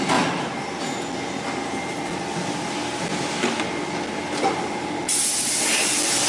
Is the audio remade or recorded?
recorded